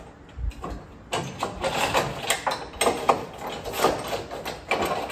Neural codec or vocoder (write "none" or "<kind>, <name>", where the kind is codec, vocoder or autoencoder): none